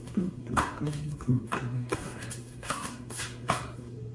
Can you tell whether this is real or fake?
fake